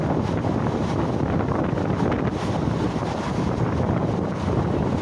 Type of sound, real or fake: real